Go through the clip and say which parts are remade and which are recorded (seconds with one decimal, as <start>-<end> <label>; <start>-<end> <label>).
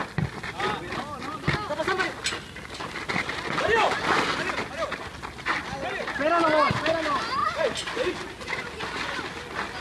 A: 0.0-9.8 recorded